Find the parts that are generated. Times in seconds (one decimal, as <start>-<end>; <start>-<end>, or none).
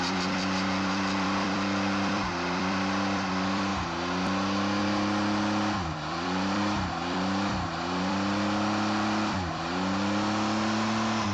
0.0-3.7; 4.8-11.3